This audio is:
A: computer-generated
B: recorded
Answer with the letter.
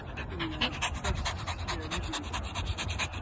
B